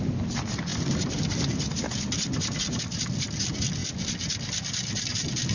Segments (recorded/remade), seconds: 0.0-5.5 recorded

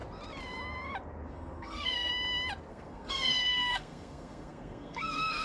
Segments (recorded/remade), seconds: 0.0-1.3 recorded; 1.3-2.1 remade; 2.1-2.7 recorded; 2.7-5.4 remade

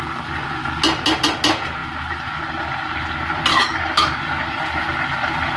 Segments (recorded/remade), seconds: 0.0-3.5 recorded; 3.5-4.6 remade; 4.6-5.6 recorded

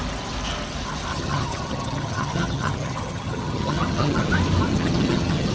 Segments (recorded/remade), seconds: 0.0-1.1 recorded; 1.1-4.3 remade; 4.3-4.7 recorded; 4.7-5.5 remade

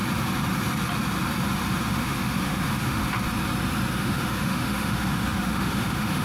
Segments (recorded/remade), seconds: 0.0-2.0 recorded; 2.0-3.0 remade; 3.0-3.9 recorded; 3.9-6.2 remade

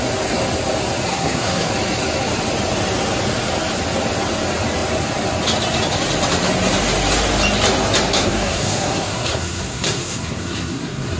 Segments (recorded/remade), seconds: 0.0-1.1 recorded; 1.1-1.7 remade; 1.7-8.1 recorded; 8.1-11.2 remade